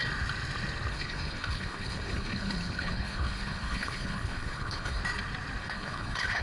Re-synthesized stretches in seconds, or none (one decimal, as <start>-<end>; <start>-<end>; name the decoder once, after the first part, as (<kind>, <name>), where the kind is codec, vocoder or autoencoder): 0.9-5.0 (codec, HILCodec); 5.6-6.4